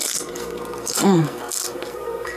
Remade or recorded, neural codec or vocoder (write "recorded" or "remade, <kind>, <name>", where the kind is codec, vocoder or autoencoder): remade, codec, SNAC